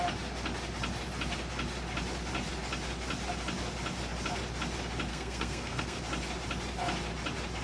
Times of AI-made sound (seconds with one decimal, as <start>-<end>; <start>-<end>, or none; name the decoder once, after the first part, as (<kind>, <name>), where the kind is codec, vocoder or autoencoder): 5.1-6.0 (codec, SNAC)